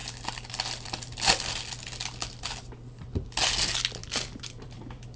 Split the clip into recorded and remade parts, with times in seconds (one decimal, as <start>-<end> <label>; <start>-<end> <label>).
0.0-4.0 recorded; 4.0-5.2 remade